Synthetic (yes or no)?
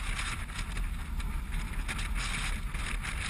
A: no